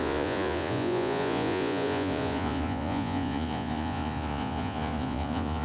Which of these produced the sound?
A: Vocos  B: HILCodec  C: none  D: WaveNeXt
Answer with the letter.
A